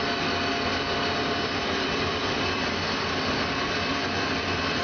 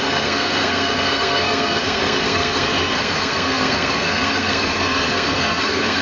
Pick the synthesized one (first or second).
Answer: second